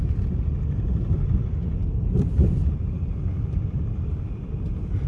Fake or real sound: real